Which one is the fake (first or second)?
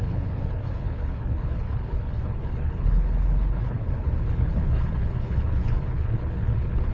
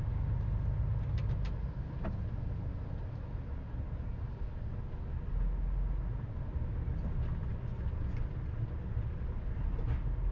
first